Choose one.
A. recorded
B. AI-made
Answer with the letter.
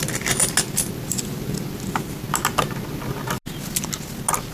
A